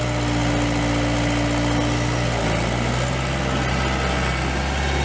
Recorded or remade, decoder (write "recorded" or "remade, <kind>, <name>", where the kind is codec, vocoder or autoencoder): recorded